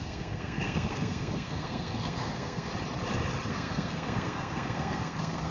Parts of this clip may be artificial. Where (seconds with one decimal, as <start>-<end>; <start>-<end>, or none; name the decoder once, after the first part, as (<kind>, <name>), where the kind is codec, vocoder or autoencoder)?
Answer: 0.0-2.7 (codec, SNAC); 3.5-5.5